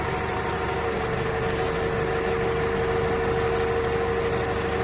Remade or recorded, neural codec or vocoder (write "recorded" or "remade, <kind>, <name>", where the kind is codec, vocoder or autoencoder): recorded